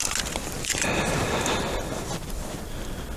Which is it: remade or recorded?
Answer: recorded